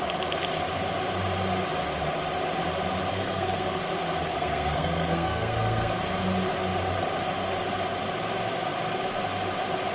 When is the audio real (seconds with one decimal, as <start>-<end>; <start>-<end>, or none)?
0.0-3.1; 3.8-4.3; 6.0-9.9